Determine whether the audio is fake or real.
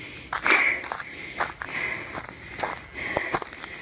real